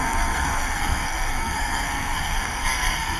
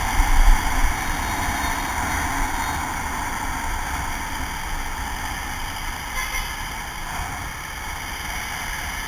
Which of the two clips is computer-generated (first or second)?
first